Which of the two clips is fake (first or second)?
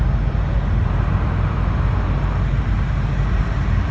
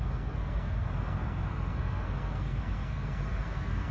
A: second